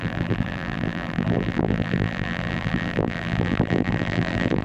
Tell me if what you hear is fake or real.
fake